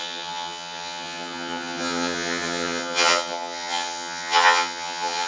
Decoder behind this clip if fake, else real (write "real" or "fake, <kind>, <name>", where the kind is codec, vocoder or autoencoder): fake, vocoder, HiFi-GAN